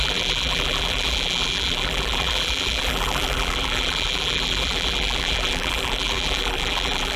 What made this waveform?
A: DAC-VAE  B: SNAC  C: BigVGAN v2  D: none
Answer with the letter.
C